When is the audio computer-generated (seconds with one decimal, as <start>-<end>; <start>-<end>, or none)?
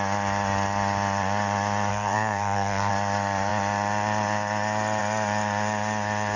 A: 1.9-2.9